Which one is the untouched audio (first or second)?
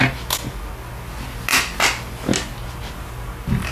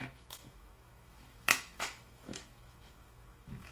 first